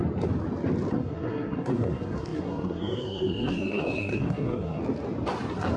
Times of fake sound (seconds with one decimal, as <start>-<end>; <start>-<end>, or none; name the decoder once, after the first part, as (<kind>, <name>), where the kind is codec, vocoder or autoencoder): 0.9-4.8 (codec, SNAC)